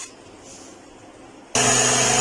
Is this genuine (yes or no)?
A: yes